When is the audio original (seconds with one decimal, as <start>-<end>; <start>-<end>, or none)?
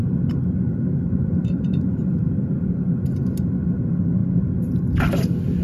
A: 0.0-1.4; 3.5-5.6